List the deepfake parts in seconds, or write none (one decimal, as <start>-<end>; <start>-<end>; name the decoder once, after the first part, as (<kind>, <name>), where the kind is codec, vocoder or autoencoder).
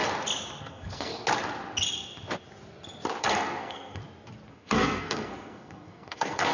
0.6-1.1 (codec, SNAC); 3.2-4.0; 4.5-6.5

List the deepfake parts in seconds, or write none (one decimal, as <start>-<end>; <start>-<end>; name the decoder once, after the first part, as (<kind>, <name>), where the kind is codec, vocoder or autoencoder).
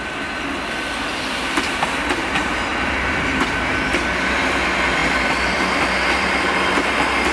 5.0-6.5 (vocoder, BigVGAN v2)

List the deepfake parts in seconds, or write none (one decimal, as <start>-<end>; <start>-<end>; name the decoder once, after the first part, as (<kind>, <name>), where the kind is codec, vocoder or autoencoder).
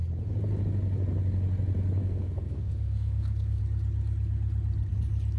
2.0-3.6 (codec, SNAC)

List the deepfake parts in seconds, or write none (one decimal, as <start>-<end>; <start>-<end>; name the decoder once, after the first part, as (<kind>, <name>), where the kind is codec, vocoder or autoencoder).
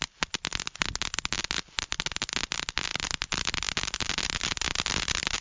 none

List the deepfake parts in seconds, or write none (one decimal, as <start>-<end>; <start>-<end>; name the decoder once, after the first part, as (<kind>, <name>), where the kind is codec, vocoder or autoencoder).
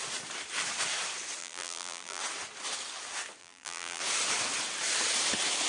1.4-2.2 (vocoder, BigVGAN v2); 3.4-4.0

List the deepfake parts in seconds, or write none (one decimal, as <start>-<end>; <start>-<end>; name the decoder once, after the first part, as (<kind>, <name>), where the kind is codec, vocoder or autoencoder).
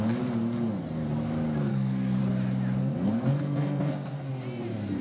1.7-2.2 (codec, SNAC); 2.8-4.3